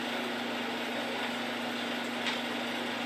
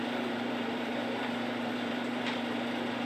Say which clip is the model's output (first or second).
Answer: second